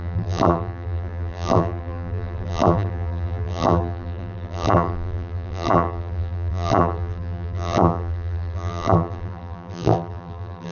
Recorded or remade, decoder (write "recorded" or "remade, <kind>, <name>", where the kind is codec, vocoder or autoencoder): remade, vocoder, BigVGAN v2